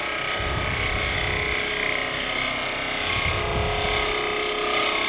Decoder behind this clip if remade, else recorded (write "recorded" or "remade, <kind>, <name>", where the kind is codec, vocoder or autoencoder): recorded